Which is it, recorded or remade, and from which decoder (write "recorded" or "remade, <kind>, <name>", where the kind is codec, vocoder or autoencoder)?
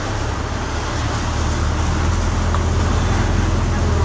recorded